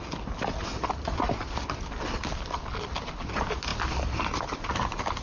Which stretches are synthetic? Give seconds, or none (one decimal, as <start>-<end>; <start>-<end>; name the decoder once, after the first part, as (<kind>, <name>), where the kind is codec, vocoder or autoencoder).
none